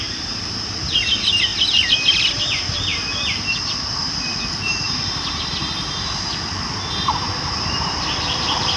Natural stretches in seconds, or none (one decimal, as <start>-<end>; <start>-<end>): 1.5-2.3

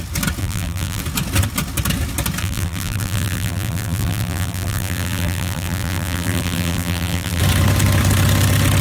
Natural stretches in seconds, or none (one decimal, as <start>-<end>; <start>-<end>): 0.0-0.4; 1.0-2.4; 7.4-8.8

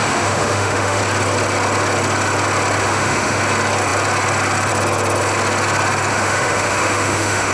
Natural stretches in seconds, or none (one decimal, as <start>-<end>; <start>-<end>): 1.0-2.8; 3.4-6.1